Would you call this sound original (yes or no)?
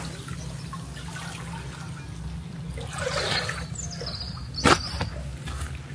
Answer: yes